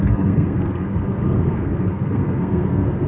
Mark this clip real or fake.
fake